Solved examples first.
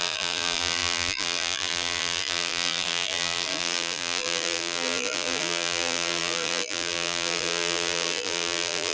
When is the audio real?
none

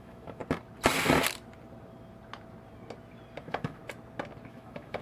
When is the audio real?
0.4-3.4; 3.8-4.5

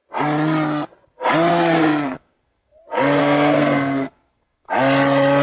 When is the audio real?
0.0-1.5; 2.8-3.2; 4.7-5.4